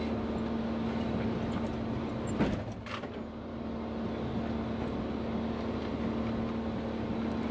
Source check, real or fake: real